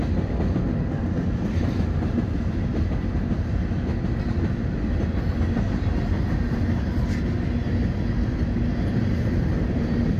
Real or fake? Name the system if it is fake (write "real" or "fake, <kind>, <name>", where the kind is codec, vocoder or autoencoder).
real